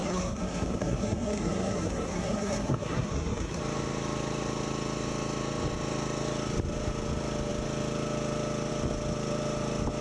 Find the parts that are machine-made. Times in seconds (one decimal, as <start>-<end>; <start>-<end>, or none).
0.0-3.6